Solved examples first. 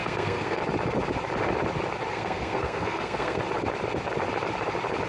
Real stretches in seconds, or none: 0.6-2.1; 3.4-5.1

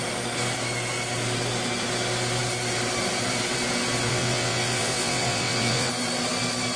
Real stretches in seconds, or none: 0.0-4.1; 5.9-6.8

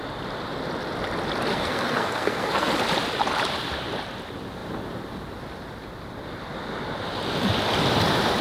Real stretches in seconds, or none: 0.0-1.5; 2.7-8.4